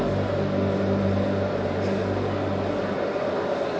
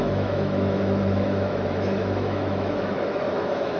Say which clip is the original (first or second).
first